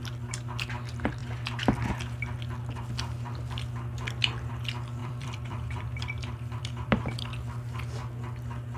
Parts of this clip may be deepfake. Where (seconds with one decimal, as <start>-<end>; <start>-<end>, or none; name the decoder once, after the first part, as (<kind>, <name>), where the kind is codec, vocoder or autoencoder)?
5.0-7.0 (vocoder, BigVGAN v2)